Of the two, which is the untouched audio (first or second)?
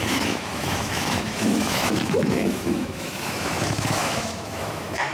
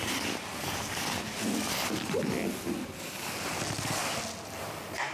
second